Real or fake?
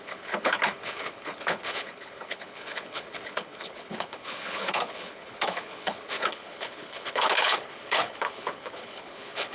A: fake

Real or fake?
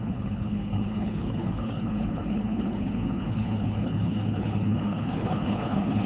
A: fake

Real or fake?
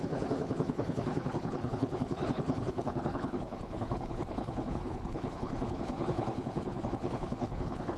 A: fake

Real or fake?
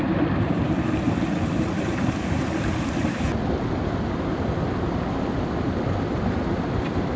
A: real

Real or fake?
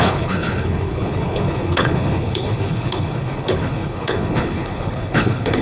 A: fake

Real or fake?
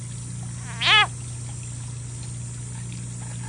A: real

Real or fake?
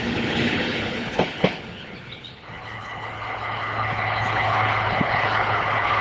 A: fake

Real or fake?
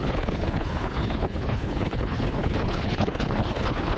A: fake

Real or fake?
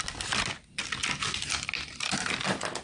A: real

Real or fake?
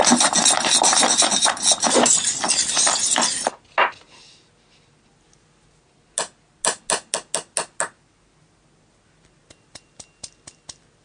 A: real